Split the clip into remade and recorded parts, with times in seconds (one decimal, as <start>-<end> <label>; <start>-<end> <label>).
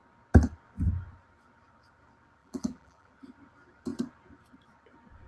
0.0-2.4 recorded; 2.4-3.1 remade; 3.1-5.3 recorded